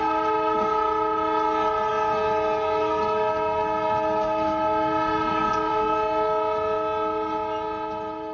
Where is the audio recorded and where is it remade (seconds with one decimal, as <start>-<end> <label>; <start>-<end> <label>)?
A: 0.0-8.3 recorded